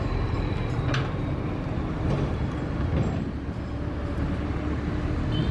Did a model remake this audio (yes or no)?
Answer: no